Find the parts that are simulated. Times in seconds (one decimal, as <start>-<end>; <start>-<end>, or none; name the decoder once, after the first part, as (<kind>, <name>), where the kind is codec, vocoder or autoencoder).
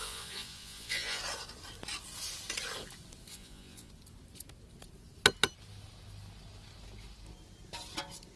0.0-1.2 (vocoder, Vocos); 3.3-3.9